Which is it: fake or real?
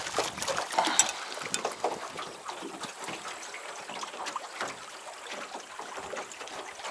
real